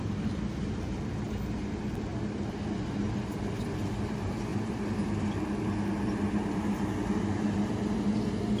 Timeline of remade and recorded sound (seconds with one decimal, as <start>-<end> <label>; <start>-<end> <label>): 0.0-4.5 recorded; 4.5-5.2 remade; 5.2-8.6 recorded